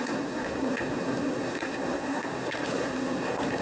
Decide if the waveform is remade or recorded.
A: remade